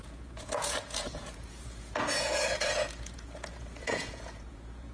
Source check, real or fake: fake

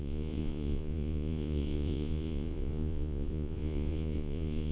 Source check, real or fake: fake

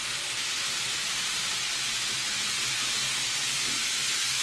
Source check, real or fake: real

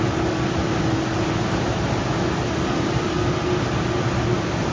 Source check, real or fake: real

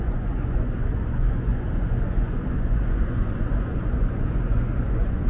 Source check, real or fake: fake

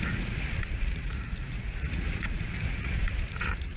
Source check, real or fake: fake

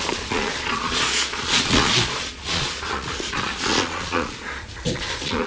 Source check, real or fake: fake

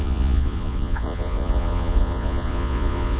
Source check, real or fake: fake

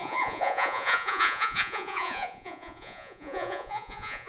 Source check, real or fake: fake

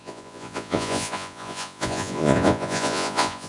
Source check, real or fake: fake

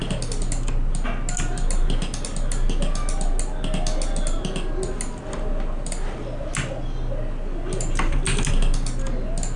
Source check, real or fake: real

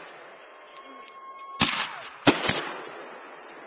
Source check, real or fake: real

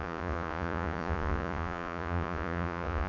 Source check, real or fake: fake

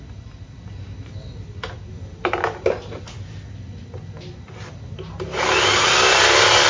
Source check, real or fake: real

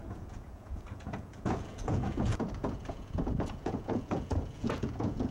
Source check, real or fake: fake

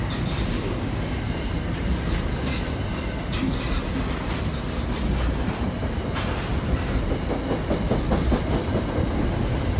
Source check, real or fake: real